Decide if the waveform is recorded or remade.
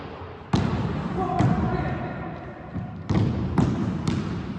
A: recorded